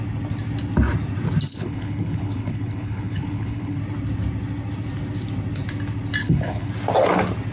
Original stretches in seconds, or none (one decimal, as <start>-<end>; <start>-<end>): 0.0-1.5; 3.8-6.2; 6.7-7.5